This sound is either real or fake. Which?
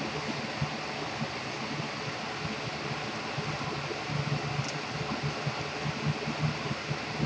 real